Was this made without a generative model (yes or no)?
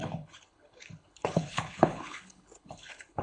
no